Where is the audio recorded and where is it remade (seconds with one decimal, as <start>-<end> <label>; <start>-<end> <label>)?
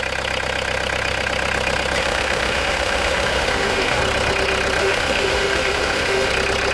0.0-2.0 recorded; 2.0-4.0 remade; 4.0-4.8 recorded; 4.8-6.3 remade; 6.3-6.7 recorded